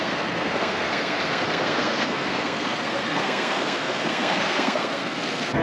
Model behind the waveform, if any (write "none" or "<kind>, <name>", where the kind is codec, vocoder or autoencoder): codec, SNAC